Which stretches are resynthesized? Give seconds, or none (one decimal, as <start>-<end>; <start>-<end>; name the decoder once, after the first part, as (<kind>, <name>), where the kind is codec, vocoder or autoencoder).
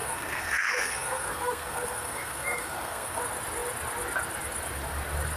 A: 0.0-3.2 (codec, SNAC)